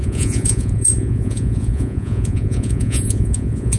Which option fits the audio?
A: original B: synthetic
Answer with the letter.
B